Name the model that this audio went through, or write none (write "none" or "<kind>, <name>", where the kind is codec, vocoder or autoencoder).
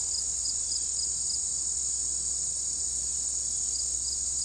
none